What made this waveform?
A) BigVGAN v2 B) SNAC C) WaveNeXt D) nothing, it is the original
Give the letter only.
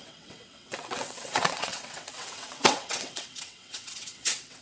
C